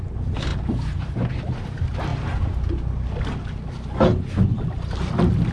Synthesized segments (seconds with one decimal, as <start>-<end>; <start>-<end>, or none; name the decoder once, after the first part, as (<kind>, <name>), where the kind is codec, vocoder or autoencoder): 0.0-2.1 (vocoder, BigVGAN v2)

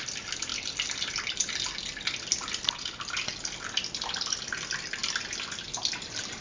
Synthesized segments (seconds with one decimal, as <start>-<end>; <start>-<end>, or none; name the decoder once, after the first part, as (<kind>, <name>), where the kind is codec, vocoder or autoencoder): 0.5-1.1 (vocoder, BigVGAN v2)

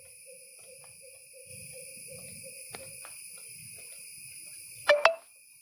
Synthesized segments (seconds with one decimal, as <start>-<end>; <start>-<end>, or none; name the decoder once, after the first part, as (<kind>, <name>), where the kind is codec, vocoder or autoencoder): 0.5-1.1 (vocoder, BigVGAN v2); 1.5-4.9

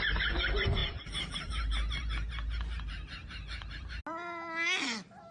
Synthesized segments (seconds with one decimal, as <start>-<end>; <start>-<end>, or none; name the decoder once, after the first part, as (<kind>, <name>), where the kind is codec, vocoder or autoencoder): 0.8-4.0 (vocoder, BigVGAN v2)

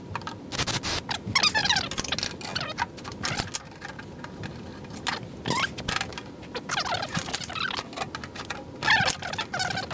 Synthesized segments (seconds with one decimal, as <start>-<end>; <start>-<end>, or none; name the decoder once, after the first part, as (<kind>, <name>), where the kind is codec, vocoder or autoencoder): 6.1-6.8 (vocoder, BigVGAN v2)

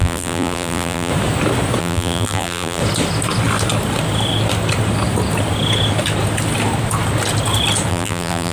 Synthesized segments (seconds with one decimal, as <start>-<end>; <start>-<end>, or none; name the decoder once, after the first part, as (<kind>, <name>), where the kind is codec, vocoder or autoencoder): 0.0-1.1 (vocoder, BigVGAN v2); 1.8-2.8; 7.9-8.5

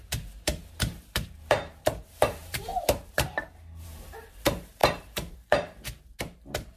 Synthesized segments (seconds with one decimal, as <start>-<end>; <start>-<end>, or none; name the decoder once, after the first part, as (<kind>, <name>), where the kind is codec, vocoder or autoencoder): 0.0-2.7 (vocoder, BigVGAN v2); 3.8-6.8